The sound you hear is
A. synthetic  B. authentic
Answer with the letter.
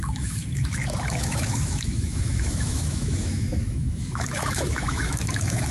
A